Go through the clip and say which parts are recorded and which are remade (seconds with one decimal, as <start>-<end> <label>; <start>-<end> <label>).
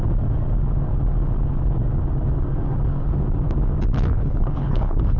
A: 0.0-4.1 recorded; 4.1-5.2 remade